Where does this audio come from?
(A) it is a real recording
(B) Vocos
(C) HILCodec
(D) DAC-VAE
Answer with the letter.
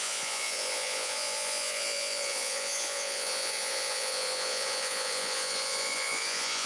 B